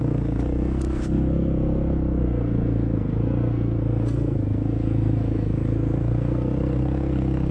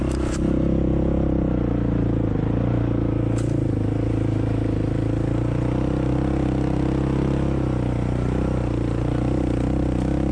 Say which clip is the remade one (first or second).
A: first